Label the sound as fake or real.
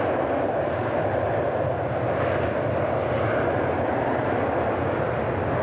real